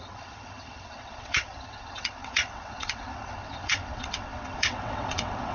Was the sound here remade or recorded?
remade